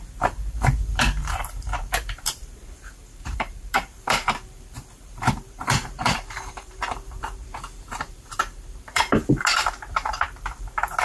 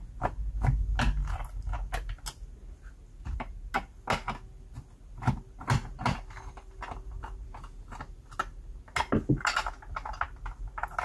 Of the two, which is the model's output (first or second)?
first